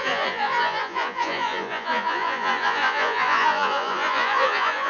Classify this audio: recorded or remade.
remade